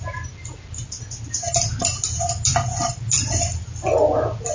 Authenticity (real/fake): real